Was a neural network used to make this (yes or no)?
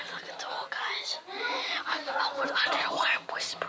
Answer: no